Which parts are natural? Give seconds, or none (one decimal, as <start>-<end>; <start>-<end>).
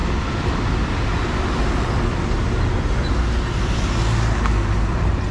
0.0-5.3